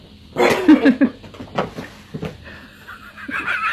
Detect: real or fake real